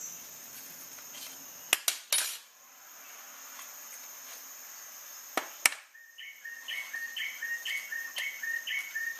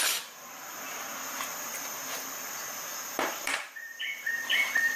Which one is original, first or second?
first